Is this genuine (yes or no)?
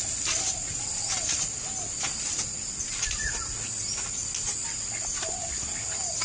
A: yes